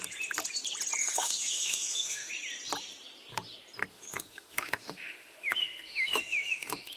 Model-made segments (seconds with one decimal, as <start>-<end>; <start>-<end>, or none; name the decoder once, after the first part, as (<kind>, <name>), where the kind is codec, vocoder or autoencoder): 1.0-2.3 (autoencoder, DAC-VAE); 3.9-7.0

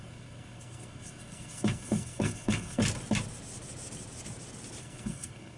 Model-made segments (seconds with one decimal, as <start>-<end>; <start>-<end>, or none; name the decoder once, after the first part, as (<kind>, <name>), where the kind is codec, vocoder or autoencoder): 0.0-2.8 (codec, SNAC); 4.8-5.6

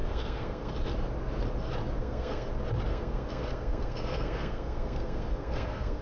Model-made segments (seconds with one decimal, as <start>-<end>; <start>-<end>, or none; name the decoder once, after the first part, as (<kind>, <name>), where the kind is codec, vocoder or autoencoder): 0.0-0.7 (codec, SNAC); 2.0-2.5; 2.9-6.0

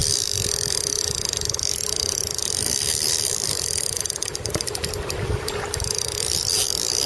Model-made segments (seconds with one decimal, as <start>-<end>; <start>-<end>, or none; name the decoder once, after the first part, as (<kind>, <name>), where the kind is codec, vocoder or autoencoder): 0.0-1.0 (vocoder, BigVGAN v2); 2.4-7.1